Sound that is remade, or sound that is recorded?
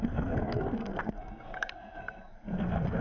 remade